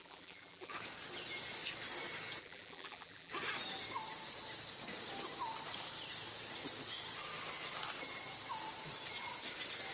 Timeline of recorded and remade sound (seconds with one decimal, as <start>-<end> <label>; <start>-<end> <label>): 0.0-0.7 remade; 0.7-2.4 recorded; 2.4-3.3 remade; 3.3-9.9 recorded